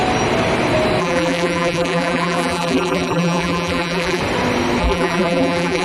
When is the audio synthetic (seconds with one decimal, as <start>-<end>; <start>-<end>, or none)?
1.0-4.2; 4.8-5.8